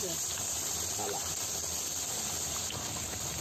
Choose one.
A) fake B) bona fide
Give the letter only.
B